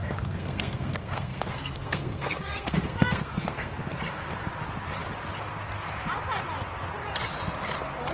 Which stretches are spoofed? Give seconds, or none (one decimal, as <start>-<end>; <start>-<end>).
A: 0.0-3.8